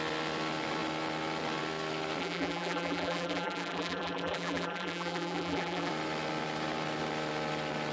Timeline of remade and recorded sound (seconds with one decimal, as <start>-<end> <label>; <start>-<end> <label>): 0.0-2.2 recorded; 2.2-5.9 remade; 5.9-7.9 recorded